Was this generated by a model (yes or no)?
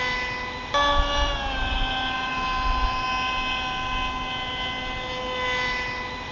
no